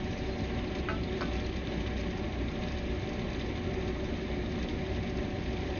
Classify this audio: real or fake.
real